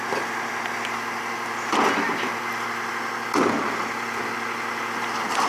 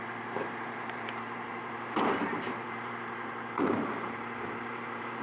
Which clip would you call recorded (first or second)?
first